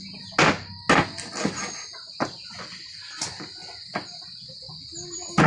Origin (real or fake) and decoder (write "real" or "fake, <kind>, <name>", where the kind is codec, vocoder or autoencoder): real